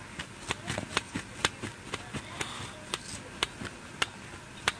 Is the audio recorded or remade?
recorded